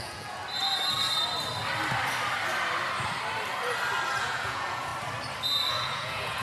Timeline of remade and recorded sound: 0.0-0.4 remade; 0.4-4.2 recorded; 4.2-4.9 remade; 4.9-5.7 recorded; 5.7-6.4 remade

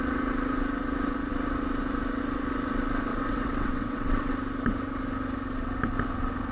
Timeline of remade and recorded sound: 0.0-3.1 recorded; 3.1-4.3 remade; 4.3-6.5 recorded

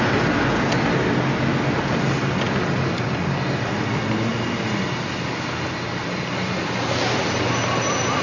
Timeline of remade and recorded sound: 0.0-8.2 recorded

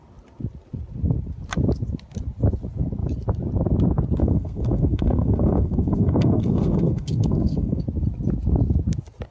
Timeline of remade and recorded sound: 0.0-4.2 recorded; 4.2-7.8 remade; 7.8-9.3 recorded